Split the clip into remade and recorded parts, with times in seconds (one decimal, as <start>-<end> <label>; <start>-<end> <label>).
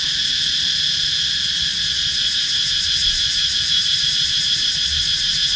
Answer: 0.0-3.4 recorded; 3.4-5.1 remade; 5.1-5.6 recorded